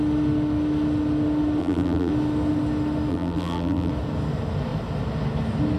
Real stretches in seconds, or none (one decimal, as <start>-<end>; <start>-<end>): 0.0-1.6; 2.1-3.1; 3.9-5.8